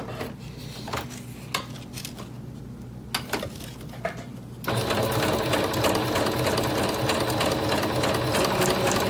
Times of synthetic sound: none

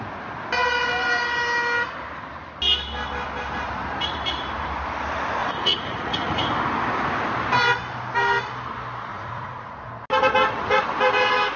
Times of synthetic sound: 5.4-6.4 (vocoder, Vocos); 9.1-9.9

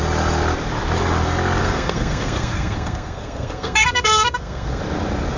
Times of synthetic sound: 1.6-4.8 (codec, SNAC)

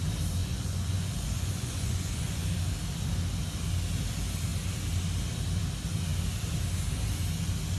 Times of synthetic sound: 0.4-2.5 (vocoder, Vocos)

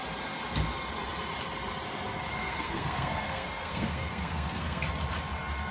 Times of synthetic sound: 2.3-4.9 (codec, SNAC)

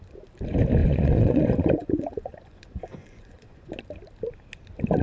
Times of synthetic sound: 0.8-3.7 (vocoder, Vocos)